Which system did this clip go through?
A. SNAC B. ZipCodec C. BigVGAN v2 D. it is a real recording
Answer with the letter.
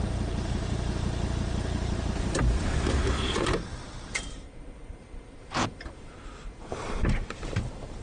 C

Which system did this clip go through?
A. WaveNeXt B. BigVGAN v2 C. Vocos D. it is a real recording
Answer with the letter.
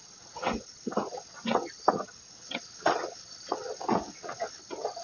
A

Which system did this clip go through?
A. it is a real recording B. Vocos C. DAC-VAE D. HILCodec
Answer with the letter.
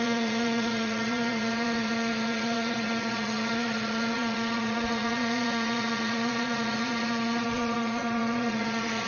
B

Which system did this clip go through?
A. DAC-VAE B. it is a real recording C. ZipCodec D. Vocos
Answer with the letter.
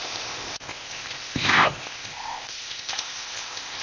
C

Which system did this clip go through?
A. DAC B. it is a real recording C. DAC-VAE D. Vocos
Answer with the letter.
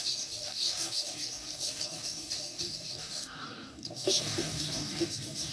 A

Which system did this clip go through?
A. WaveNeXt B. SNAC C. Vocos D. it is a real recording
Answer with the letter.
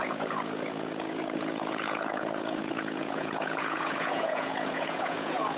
C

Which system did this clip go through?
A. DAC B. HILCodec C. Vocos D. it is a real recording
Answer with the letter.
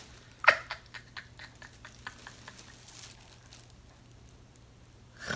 D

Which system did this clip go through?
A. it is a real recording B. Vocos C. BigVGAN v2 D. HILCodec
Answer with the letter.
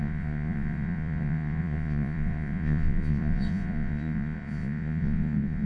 B